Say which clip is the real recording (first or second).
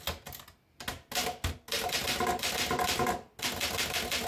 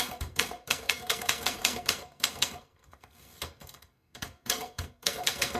first